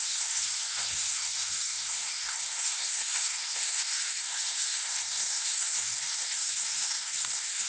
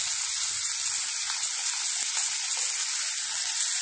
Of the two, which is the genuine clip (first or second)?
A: second